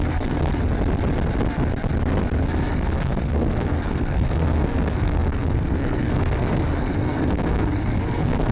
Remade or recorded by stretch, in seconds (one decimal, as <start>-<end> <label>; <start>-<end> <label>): 0.0-0.5 remade; 0.5-2.7 recorded; 2.7-8.5 remade